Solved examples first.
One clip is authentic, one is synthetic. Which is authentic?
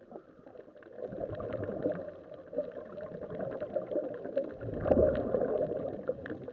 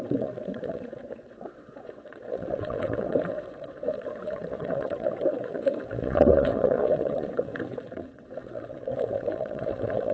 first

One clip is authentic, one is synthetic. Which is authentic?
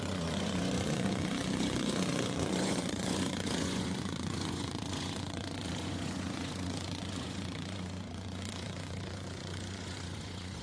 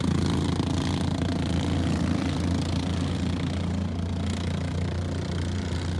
second